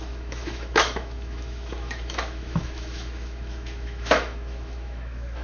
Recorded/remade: remade